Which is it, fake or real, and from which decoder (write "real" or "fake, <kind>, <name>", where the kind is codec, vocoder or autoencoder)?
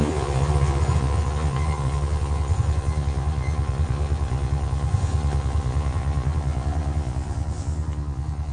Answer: fake, vocoder, Vocos